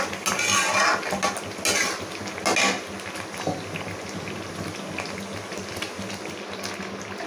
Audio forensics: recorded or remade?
recorded